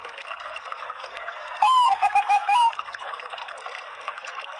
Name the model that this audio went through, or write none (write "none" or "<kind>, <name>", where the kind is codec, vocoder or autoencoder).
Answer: codec, SNAC